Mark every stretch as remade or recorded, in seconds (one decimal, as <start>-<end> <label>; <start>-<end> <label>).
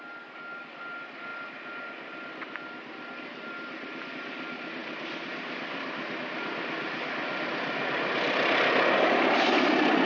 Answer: 0.0-10.1 recorded